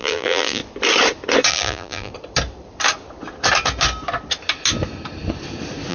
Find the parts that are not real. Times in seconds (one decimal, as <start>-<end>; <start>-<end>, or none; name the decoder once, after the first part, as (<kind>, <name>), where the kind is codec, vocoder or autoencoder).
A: 0.0-0.6 (vocoder, BigVGAN v2); 1.5-2.1